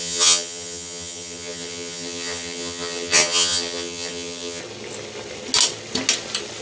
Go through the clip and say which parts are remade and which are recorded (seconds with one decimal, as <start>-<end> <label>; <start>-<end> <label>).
0.0-4.6 remade; 4.6-6.6 recorded